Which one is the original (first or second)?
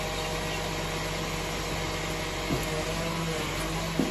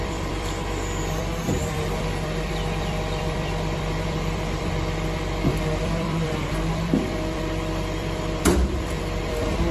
first